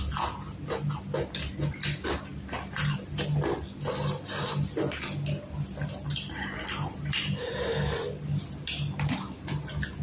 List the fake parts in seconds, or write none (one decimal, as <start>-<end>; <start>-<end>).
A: none